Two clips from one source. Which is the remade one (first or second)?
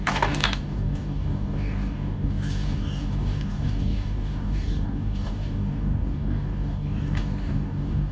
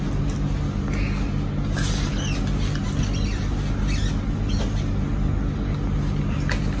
first